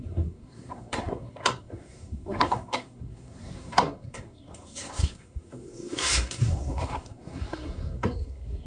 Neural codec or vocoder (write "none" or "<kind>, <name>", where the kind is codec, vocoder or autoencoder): codec, SNAC